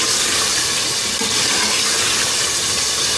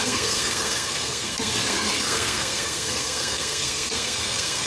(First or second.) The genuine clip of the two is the first